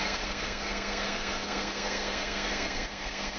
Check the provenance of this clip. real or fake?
fake